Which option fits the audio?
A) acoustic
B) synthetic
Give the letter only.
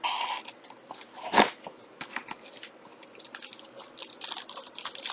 A